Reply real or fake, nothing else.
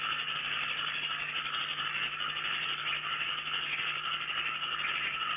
real